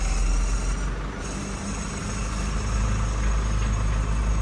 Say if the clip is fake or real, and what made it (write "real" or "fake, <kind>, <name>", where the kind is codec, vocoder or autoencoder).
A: real